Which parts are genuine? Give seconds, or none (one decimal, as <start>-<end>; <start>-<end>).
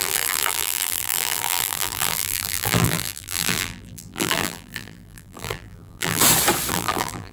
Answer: 6.2-6.7